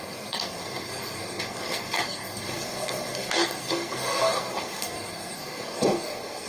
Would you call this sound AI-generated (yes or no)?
yes